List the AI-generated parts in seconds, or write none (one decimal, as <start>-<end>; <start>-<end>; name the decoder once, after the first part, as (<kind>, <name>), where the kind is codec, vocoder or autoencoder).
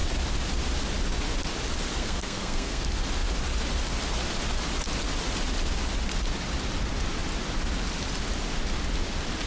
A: 2.0-2.8 (codec, SNAC)